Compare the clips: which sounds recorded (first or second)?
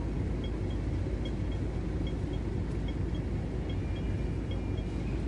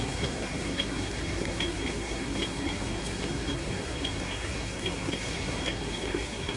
first